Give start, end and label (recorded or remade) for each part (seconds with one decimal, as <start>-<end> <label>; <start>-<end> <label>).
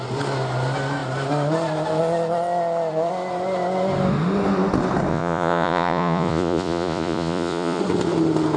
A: 0.0-5.1 recorded; 5.1-7.8 remade; 7.8-8.6 recorded